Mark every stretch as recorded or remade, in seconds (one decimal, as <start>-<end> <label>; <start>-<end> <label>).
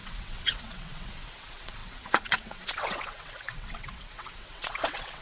0.0-5.2 remade